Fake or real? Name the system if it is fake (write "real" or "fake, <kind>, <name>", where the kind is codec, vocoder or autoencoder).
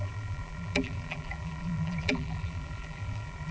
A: fake, vocoder, BigVGAN v2